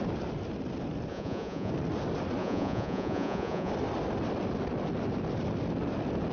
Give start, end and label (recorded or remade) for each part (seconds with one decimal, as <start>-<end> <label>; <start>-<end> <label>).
0.0-1.1 recorded; 1.1-1.7 remade; 1.7-2.4 recorded; 2.4-3.7 remade; 3.7-6.3 recorded